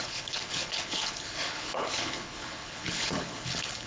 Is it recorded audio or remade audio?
remade